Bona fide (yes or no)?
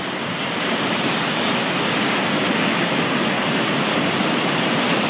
yes